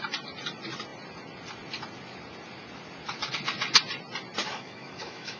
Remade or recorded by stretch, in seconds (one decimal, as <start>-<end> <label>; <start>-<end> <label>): 0.0-4.4 recorded; 4.4-5.4 remade